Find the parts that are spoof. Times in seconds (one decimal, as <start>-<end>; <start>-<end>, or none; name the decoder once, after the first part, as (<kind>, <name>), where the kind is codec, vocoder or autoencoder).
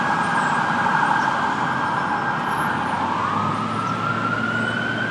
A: none